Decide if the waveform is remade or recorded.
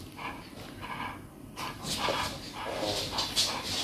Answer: recorded